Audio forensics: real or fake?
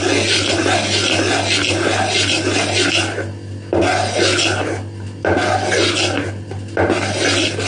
real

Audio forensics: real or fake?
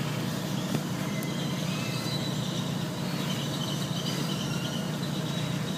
fake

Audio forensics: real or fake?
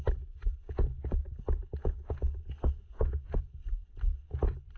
real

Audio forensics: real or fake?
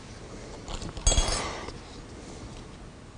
real